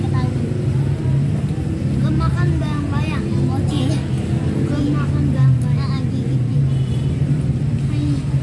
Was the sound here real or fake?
real